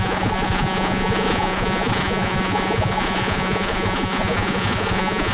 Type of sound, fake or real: fake